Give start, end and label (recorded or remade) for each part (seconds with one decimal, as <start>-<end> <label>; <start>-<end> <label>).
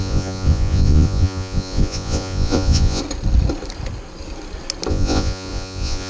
0.0-3.0 remade; 3.0-4.9 recorded; 4.9-6.1 remade